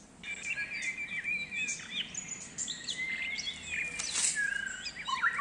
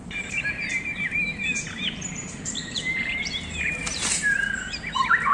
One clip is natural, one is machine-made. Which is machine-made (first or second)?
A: second